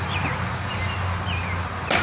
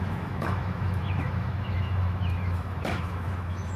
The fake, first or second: second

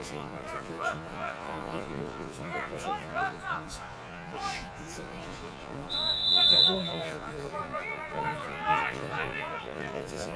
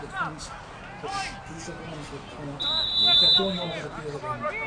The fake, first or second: first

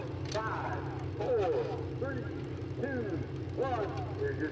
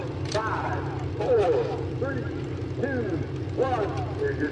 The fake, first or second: second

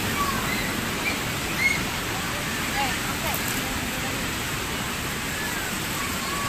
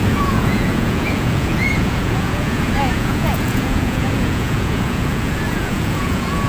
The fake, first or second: second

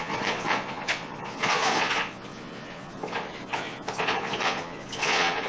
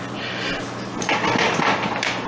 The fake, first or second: first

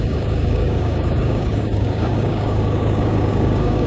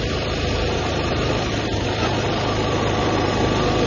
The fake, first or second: first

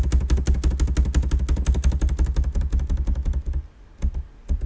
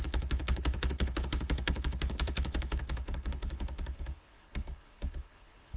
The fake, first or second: second